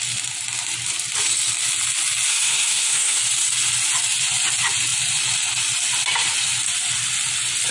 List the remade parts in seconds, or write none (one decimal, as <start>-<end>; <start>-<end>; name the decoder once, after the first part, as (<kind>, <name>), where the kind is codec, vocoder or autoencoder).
2.3-3.2 (codec, SNAC)